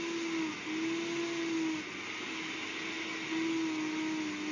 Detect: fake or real real